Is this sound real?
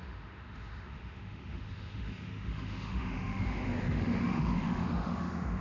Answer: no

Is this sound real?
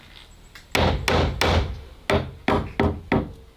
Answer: yes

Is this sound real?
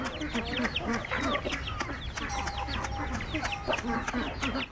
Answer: yes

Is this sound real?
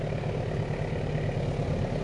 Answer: yes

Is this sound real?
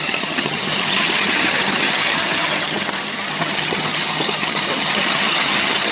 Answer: no